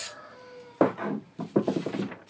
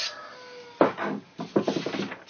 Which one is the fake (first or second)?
first